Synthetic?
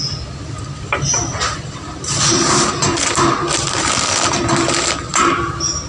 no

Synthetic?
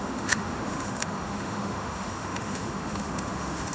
yes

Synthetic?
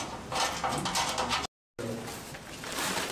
no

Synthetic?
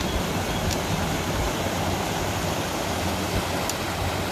no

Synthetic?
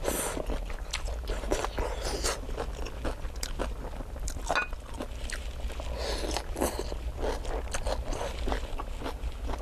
no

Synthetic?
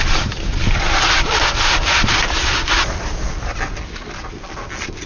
no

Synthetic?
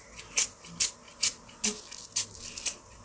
no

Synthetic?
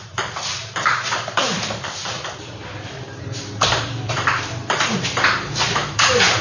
yes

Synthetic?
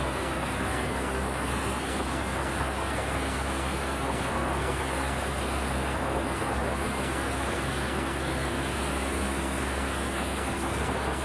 yes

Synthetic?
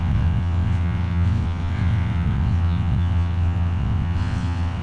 yes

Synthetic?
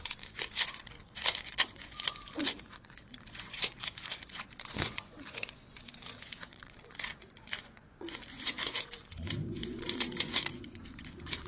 yes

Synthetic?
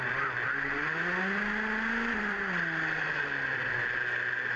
no